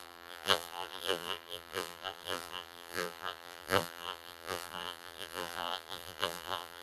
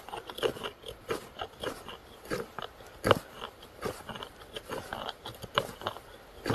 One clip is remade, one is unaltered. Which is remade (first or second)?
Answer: first